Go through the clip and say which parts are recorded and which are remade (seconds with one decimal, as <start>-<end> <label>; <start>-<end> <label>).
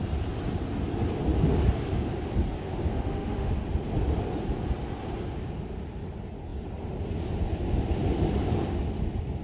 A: 0.0-2.9 recorded; 2.9-3.5 remade; 3.5-9.4 recorded